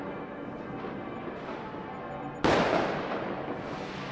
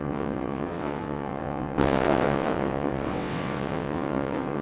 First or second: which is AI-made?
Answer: second